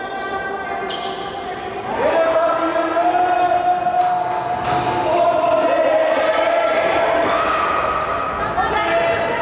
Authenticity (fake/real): real